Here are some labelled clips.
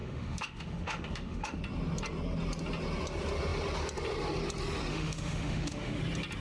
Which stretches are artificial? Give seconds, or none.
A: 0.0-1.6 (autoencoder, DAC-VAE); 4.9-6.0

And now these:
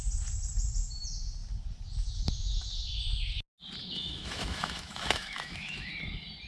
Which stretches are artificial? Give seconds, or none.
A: 3.8-5.9 (autoencoder, DAC-VAE)